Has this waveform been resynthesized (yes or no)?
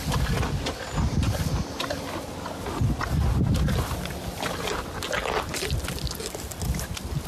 no